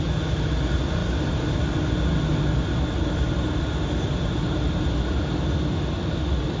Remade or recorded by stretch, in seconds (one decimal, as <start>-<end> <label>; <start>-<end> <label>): 0.0-6.6 recorded